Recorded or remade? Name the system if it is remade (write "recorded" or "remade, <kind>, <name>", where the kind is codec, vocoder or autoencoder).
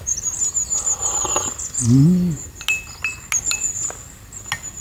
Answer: recorded